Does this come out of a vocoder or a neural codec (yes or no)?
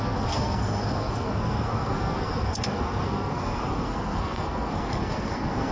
yes